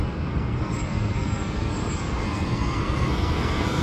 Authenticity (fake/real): fake